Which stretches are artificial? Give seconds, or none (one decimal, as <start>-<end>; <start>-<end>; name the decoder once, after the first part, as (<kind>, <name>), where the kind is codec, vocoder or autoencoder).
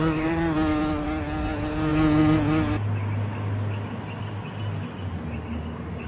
none